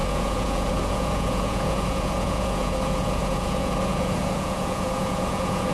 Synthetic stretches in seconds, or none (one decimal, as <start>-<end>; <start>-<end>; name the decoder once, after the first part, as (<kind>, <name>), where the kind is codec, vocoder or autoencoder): 0.0-5.7 (vocoder, Vocos)